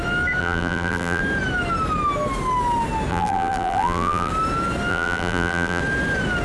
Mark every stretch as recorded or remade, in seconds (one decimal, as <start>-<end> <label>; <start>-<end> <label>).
0.0-0.4 recorded; 0.4-1.2 remade; 1.2-3.1 recorded; 3.1-4.3 remade; 4.3-4.9 recorded; 4.9-5.8 remade; 5.8-6.4 recorded